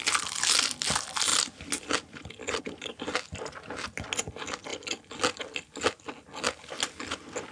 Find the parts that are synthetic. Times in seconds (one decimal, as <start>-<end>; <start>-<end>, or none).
none